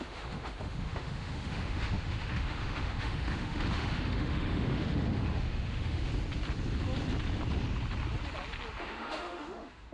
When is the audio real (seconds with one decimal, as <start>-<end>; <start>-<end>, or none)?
6.1-8.8